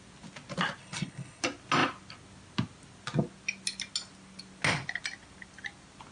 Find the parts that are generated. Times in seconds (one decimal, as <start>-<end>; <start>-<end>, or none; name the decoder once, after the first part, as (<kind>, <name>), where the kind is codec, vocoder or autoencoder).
0.8-1.4 (codec, HILCodec)